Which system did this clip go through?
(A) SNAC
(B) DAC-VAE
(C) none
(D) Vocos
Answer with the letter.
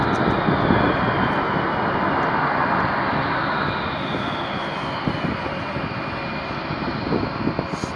C